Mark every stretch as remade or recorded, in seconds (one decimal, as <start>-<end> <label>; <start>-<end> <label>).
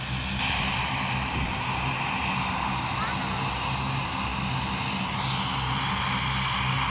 0.0-6.9 recorded